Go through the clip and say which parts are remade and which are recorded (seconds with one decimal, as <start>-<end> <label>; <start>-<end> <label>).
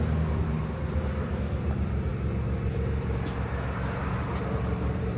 0.0-5.2 recorded